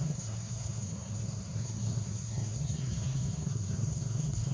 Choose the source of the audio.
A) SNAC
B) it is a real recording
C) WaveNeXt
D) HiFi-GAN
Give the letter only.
A